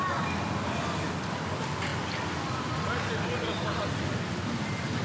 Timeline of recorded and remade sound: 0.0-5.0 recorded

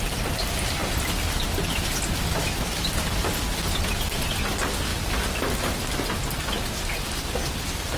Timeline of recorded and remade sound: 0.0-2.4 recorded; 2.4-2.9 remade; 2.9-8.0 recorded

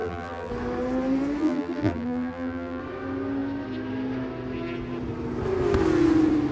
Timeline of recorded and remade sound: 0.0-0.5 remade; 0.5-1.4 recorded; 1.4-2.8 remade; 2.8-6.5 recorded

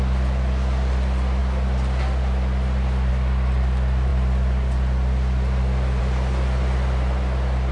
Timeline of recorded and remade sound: 0.0-7.7 recorded

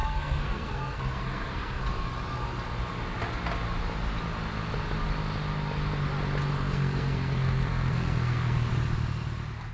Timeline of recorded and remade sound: 0.0-1.8 remade; 1.8-6.5 recorded; 6.5-8.7 remade; 8.7-9.7 recorded